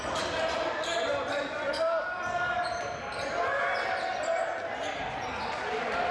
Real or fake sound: real